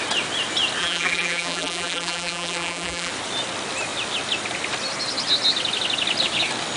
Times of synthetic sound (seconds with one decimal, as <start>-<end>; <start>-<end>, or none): 0.8-3.1